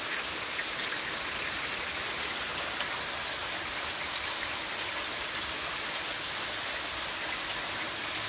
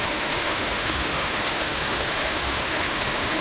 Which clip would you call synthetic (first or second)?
second